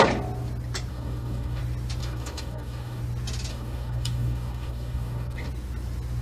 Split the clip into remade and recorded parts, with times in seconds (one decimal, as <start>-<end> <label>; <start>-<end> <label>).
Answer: 0.0-0.9 recorded; 0.9-1.6 remade; 1.6-2.0 recorded; 2.0-3.0 remade; 3.0-3.5 recorded; 3.5-5.5 remade; 5.5-6.2 recorded